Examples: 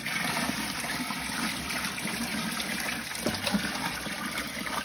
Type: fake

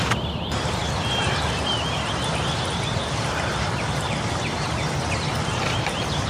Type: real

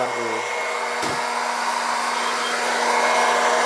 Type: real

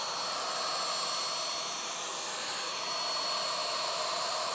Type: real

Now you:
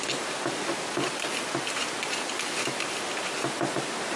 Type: real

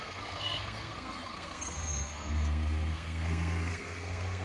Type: fake